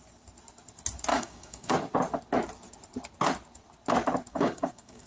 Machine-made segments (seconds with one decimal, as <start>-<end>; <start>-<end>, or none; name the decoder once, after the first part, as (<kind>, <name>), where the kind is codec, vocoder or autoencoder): 1.1-1.7 (codec, DAC); 4.3-5.1